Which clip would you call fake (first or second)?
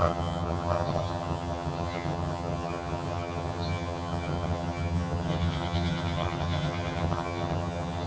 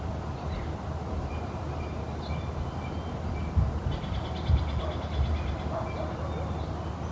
first